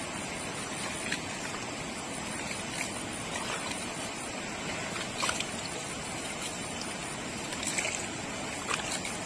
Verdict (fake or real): real